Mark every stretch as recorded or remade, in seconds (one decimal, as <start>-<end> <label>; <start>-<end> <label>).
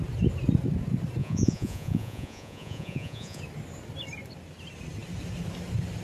0.0-1.2 recorded; 1.2-3.4 remade; 3.4-6.0 recorded